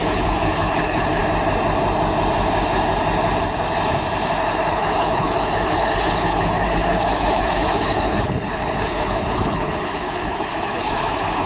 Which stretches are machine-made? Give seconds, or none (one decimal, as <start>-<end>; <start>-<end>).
0.0-1.2; 4.7-11.5